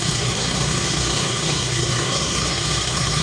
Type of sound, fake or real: fake